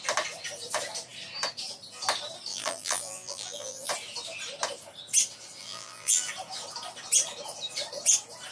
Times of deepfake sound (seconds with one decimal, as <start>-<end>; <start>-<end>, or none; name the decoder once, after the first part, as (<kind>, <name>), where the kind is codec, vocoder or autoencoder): 2.5-3.9 (vocoder, BigVGAN v2); 5.6-6.3